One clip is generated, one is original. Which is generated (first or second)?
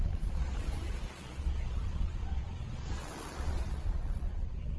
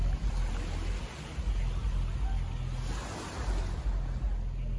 first